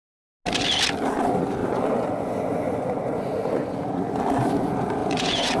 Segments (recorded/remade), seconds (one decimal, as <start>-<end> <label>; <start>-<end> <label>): 0.0-1.6 recorded; 1.6-4.1 remade; 4.1-5.0 recorded; 5.0-5.6 remade